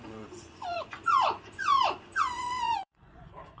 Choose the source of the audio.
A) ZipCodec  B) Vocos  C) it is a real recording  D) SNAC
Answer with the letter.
B